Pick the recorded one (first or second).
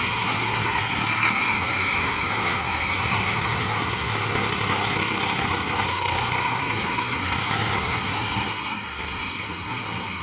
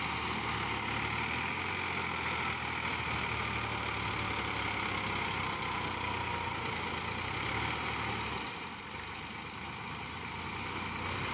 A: second